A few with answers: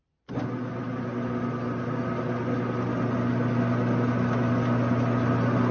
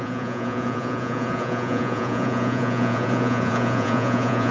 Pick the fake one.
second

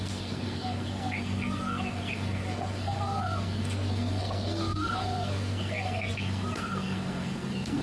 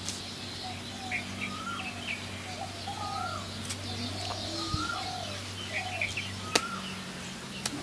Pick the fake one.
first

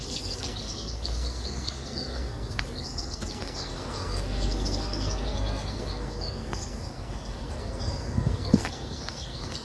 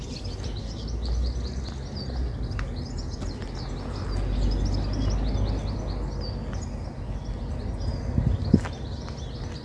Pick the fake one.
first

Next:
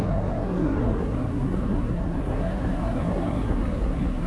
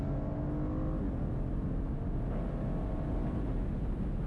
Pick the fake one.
first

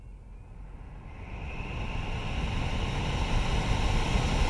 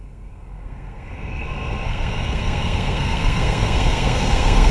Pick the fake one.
second